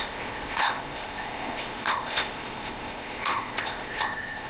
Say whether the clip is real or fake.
fake